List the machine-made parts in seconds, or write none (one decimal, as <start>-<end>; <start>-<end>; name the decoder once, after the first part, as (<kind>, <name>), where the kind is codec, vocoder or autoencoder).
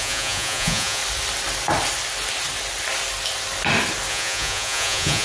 0.0-1.0 (vocoder, Vocos); 4.1-5.2